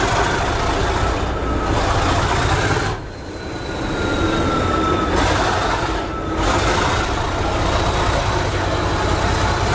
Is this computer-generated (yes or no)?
no